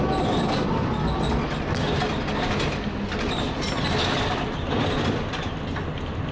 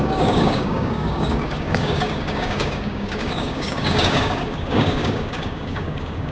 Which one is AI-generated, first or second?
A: second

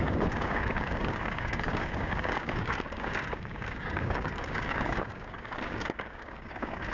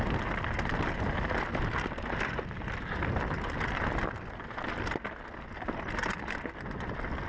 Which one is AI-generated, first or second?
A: first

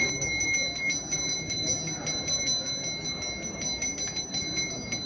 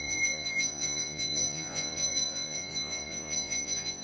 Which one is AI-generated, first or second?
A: second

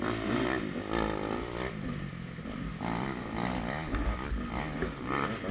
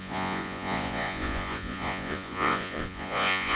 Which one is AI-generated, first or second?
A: second